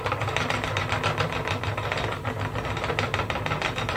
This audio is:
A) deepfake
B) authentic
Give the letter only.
B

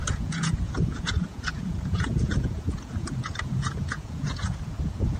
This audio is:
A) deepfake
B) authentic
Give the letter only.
A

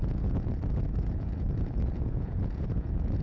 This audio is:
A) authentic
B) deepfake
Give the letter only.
B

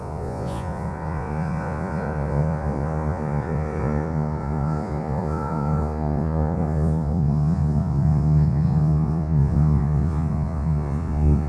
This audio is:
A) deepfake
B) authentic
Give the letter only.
A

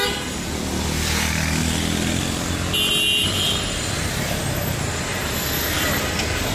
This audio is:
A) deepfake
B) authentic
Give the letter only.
B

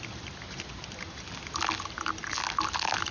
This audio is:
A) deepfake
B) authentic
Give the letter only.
B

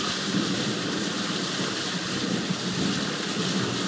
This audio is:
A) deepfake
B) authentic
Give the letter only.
B